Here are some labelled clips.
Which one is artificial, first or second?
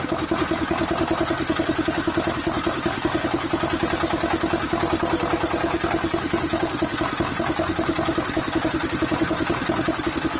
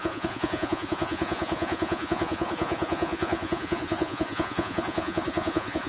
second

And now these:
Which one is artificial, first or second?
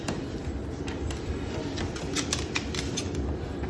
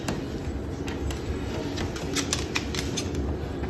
first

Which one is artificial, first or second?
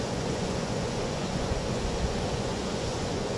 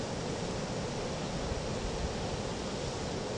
first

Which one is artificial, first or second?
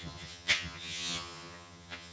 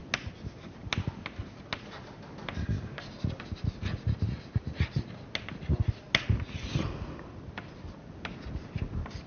first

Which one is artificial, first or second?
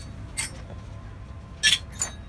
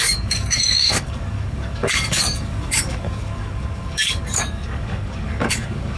second